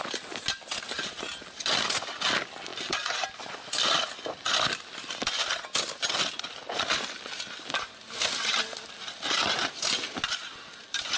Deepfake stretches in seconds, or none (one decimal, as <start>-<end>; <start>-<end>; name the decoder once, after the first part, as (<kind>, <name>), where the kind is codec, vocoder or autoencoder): 2.7-6.3 (vocoder, BigVGAN v2)